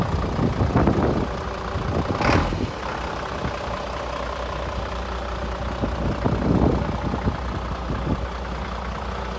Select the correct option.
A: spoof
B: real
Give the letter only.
B